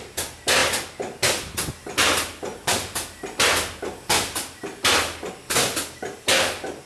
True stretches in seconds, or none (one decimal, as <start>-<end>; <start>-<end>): 0.0-6.9